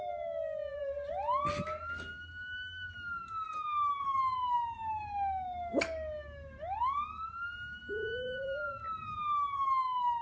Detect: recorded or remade recorded